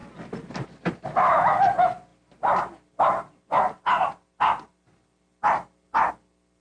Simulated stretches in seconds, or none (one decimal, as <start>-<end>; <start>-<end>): none